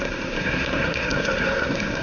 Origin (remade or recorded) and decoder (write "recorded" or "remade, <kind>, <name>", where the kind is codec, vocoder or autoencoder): remade, codec, SNAC